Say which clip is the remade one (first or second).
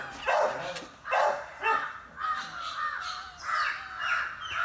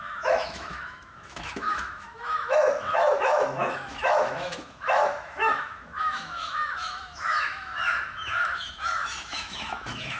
second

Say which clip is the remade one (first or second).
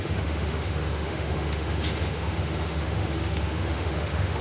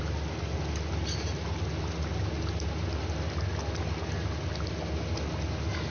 first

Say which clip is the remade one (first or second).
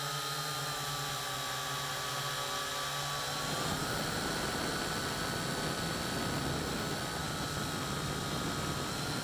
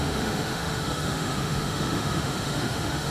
second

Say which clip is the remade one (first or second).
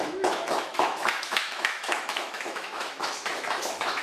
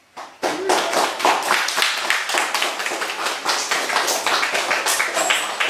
first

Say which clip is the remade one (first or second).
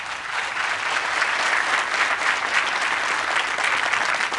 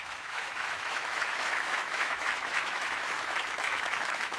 second